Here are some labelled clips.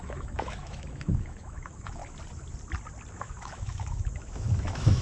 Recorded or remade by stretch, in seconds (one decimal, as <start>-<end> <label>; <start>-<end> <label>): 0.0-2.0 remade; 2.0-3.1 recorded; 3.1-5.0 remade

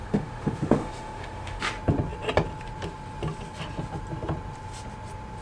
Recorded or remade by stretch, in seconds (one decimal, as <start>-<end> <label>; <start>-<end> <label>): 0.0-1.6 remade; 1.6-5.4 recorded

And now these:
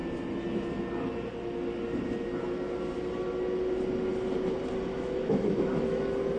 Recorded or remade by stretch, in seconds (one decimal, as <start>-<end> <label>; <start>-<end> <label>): 0.0-4.9 recorded; 4.9-6.0 remade; 6.0-6.4 recorded

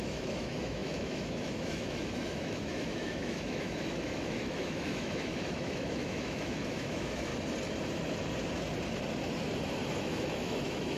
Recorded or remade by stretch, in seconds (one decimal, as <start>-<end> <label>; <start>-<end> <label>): 0.0-7.3 remade; 7.3-10.0 recorded; 10.0-11.0 remade

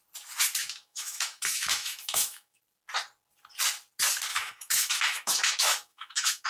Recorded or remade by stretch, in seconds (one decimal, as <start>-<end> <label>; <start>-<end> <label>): 0.0-0.6 recorded; 0.6-2.6 remade; 2.6-4.3 recorded; 4.3-6.5 remade